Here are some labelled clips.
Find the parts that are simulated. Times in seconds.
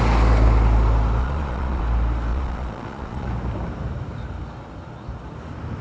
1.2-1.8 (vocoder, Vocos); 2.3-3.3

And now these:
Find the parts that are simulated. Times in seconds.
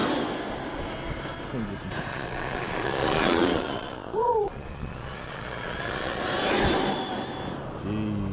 2.1-6.2 (vocoder, Vocos)